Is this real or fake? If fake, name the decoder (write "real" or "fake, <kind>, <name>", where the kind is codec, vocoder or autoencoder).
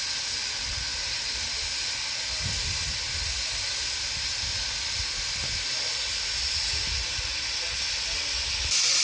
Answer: real